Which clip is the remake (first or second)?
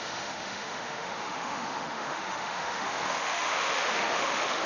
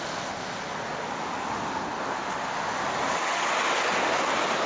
first